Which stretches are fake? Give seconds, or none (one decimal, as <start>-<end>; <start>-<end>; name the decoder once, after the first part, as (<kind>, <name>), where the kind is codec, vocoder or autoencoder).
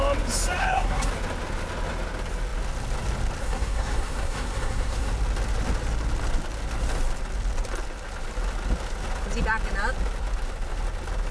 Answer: 0.6-1.1 (codec, SNAC); 3.4-5.1